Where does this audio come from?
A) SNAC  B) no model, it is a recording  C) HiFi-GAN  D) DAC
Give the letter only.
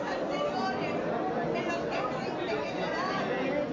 B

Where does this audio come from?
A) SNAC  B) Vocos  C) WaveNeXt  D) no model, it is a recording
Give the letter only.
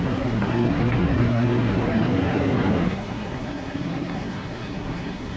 A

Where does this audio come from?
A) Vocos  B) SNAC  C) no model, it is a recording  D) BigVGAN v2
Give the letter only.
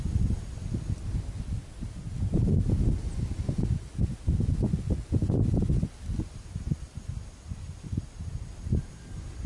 C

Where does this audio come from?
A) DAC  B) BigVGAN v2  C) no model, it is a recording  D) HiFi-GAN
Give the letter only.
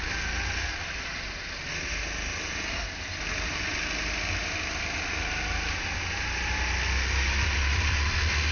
C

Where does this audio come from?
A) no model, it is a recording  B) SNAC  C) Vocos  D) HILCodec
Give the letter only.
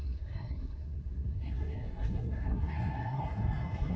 B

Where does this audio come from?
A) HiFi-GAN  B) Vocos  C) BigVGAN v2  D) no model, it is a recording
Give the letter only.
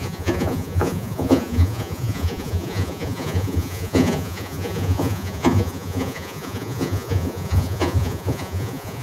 B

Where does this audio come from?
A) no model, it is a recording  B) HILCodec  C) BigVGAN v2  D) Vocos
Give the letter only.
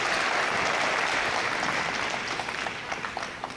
A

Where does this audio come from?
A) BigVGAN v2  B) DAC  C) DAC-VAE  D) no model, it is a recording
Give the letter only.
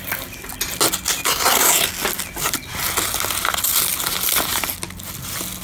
D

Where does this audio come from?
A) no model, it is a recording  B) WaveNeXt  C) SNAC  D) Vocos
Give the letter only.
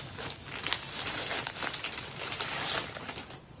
A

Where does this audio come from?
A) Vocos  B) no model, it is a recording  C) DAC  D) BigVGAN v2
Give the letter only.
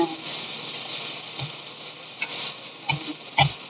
B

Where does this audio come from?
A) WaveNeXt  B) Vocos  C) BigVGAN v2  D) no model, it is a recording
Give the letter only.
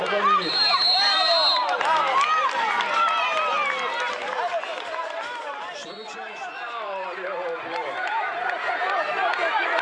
C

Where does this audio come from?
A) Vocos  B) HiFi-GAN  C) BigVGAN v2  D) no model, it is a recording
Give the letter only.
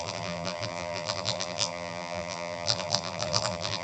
C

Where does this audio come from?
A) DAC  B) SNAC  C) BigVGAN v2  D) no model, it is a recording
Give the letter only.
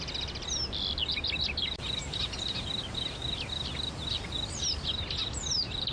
D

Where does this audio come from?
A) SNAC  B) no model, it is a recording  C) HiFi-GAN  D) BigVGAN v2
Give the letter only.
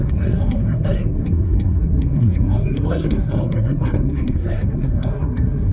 A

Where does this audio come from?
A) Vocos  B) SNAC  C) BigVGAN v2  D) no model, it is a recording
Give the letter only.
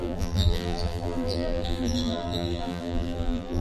C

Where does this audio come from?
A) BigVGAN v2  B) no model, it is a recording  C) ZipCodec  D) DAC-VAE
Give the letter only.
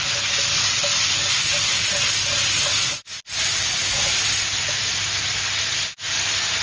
B